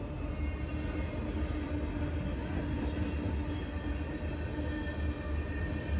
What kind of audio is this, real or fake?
real